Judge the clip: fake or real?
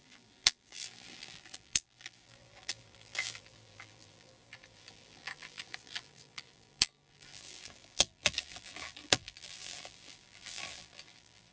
fake